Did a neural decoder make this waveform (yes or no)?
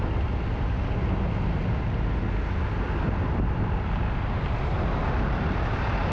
no